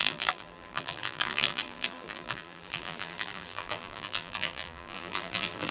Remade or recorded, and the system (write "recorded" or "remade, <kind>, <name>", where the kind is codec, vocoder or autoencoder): remade, vocoder, BigVGAN v2